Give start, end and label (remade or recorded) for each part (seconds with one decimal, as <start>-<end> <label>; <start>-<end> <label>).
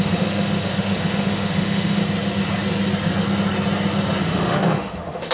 0.0-2.0 remade; 2.0-4.2 recorded; 4.2-5.3 remade